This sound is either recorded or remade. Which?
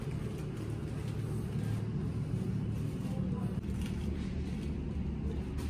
recorded